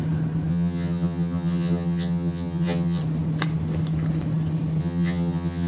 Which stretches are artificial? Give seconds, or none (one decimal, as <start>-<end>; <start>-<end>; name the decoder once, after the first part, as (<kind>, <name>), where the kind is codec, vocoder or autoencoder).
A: 0.5-3.0 (vocoder, HiFi-GAN); 4.8-5.7

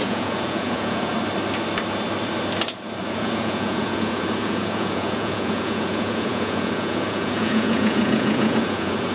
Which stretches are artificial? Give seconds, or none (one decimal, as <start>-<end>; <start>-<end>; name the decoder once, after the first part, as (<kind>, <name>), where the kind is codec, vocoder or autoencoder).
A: 0.0-1.1 (vocoder, Vocos); 3.0-9.1

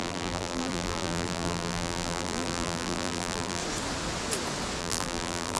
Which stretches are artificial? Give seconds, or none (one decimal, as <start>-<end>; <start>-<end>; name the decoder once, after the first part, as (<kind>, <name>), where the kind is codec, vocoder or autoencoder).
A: 0.0-3.6 (vocoder, BigVGAN v2); 4.8-5.6

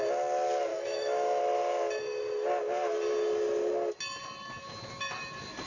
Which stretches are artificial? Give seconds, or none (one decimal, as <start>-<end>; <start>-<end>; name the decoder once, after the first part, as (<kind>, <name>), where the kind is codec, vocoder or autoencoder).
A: 0.7-1.4 (autoencoder, DAC-VAE)

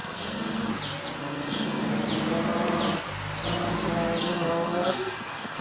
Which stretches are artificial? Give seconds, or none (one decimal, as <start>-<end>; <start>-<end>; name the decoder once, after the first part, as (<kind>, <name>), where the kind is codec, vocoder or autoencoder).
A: 0.0-0.7 (codec, SNAC); 1.2-1.9; 4.2-5.6

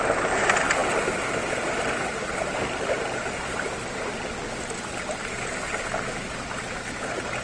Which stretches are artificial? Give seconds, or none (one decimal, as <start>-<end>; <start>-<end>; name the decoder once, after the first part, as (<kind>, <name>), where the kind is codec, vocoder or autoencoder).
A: none

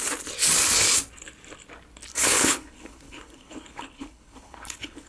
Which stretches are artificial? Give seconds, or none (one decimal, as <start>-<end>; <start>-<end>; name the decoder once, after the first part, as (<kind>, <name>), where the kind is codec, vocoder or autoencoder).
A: 2.1-5.1 (codec, HILCodec)